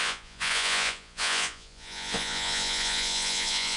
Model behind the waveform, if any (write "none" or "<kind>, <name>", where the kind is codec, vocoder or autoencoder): vocoder, Vocos